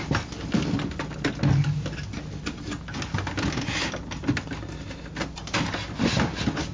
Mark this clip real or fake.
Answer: real